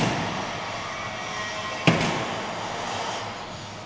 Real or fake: real